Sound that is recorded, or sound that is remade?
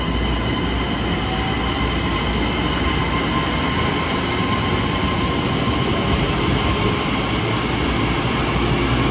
recorded